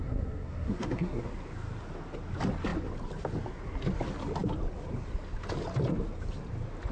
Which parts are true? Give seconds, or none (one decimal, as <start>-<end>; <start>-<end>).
1.3-6.9